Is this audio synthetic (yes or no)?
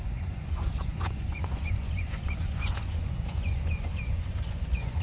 yes